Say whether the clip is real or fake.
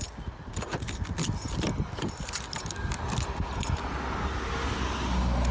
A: real